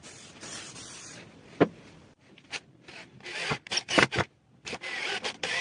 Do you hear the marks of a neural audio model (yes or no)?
yes